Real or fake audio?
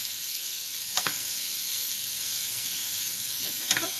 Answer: fake